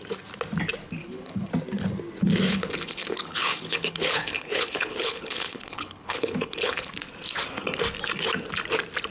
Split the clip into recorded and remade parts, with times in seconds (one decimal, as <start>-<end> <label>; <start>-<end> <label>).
0.0-1.0 recorded; 1.0-1.5 remade; 1.5-2.5 recorded; 2.5-6.9 remade; 6.9-9.1 recorded

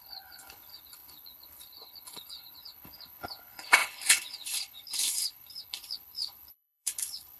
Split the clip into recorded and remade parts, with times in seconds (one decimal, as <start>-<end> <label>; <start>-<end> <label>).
0.0-7.4 remade

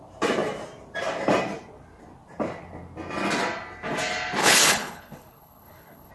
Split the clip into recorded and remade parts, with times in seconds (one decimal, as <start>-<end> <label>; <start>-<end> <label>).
0.0-4.4 recorded; 4.4-6.1 remade